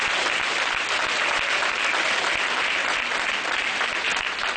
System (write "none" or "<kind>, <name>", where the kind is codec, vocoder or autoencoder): none